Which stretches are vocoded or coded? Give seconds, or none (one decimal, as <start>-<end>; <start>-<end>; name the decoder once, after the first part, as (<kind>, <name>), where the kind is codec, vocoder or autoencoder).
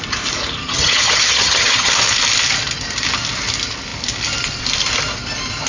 0.6-1.9 (vocoder, HiFi-GAN)